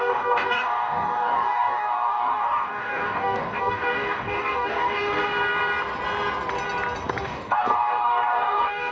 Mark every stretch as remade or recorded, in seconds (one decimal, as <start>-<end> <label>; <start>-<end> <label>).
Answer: 0.0-5.2 remade; 5.2-7.2 recorded; 7.2-8.9 remade